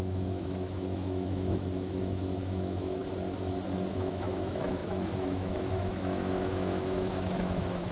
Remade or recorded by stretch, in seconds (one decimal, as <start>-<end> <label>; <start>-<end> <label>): 0.0-3.0 remade; 3.0-3.9 recorded; 3.9-7.9 remade